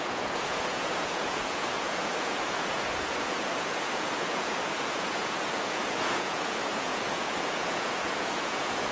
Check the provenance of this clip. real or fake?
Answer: fake